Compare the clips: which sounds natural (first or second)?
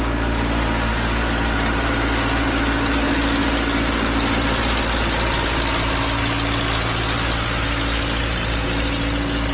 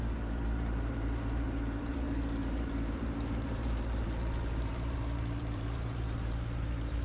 first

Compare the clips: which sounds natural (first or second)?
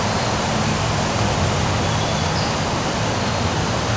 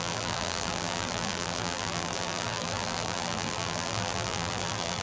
first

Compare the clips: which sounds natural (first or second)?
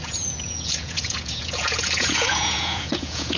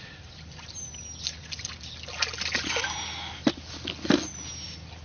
second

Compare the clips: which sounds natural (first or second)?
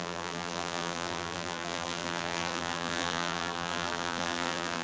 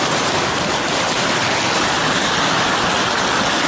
second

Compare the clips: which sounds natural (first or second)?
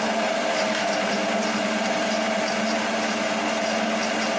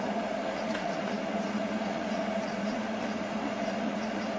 first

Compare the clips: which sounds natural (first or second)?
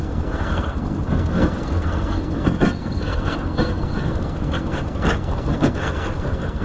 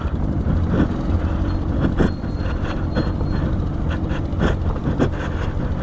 second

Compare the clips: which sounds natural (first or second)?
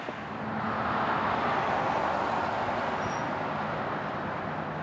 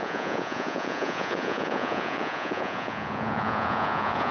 first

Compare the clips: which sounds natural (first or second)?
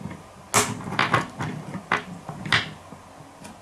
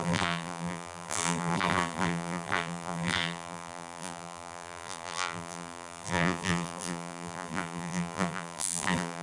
first